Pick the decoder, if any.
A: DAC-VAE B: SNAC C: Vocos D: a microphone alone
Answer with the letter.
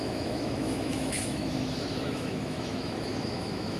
A